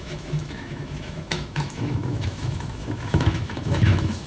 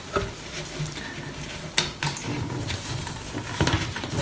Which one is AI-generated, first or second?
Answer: first